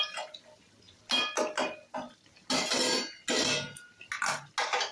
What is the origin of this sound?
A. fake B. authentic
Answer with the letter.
B